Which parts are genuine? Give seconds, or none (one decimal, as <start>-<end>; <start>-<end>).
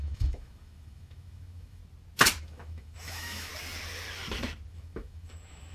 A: 1.8-2.4; 3.5-4.7